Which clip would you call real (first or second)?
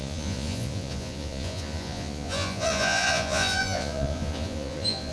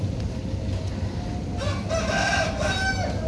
second